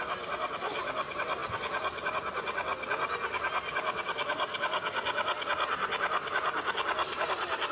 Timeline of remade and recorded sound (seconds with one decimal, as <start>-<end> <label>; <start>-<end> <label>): 0.0-7.7 recorded